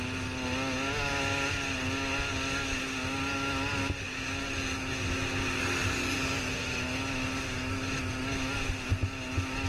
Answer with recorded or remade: recorded